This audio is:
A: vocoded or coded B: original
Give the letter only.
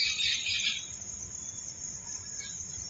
A